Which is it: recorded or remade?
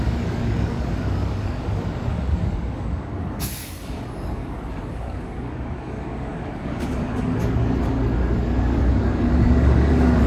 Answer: remade